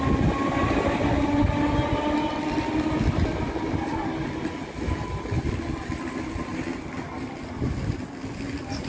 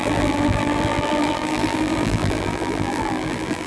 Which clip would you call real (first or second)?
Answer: first